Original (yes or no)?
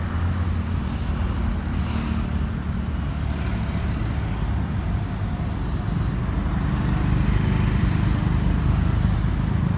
yes